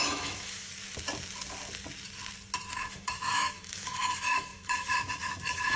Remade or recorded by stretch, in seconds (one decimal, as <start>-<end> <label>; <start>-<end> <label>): 0.0-0.7 remade; 0.7-2.7 recorded; 2.7-5.8 remade